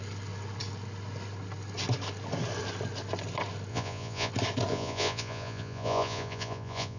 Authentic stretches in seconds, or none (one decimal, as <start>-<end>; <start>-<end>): 0.0-3.7; 4.3-4.7